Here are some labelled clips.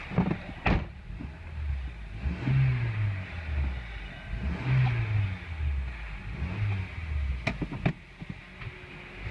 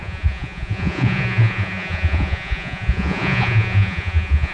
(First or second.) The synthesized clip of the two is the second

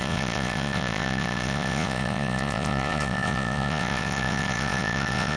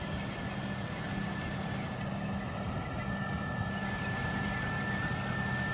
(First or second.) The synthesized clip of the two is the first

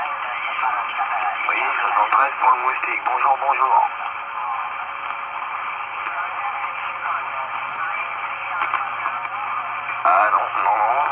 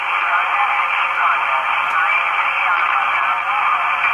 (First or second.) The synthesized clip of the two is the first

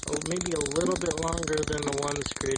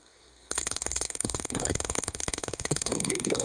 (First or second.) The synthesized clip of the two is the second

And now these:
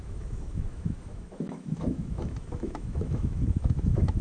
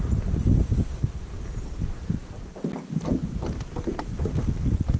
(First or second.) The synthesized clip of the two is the first